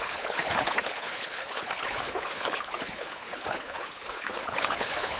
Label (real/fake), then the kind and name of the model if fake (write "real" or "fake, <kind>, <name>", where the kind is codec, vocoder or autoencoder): fake, codec, HILCodec